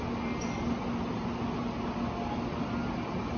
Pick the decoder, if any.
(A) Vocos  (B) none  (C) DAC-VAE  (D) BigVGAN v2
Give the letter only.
B